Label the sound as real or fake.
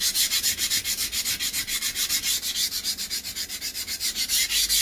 real